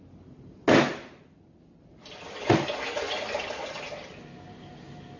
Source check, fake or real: real